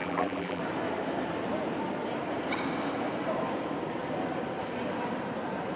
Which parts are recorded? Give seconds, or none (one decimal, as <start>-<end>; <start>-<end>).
0.6-5.8